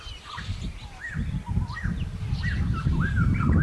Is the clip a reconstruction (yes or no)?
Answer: no